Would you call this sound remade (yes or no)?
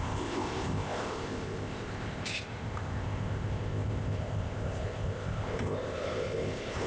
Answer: yes